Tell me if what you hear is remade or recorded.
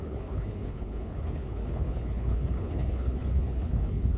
remade